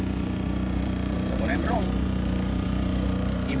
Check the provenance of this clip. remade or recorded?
remade